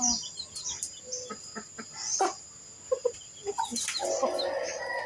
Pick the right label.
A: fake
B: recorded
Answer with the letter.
B